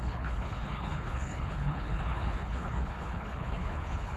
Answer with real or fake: fake